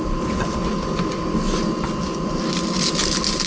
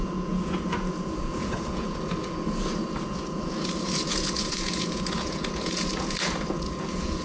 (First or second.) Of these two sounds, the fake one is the second